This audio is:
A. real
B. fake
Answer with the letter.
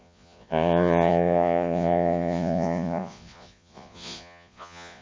B